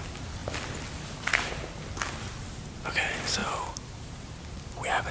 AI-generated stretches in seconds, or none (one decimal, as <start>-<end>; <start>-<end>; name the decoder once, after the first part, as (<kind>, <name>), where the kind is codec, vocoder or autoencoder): 0.0-0.4 (vocoder, BigVGAN v2); 2.1-5.1